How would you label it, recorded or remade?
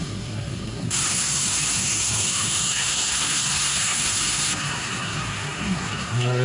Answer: remade